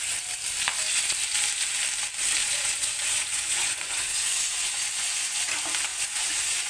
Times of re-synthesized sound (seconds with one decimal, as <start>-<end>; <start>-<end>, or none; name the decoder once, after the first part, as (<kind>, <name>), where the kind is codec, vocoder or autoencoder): 2.4-5.5 (vocoder, Vocos); 5.9-6.7